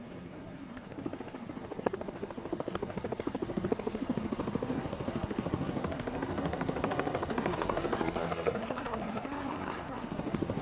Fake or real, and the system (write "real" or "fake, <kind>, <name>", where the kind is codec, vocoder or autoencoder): fake, codec, SNAC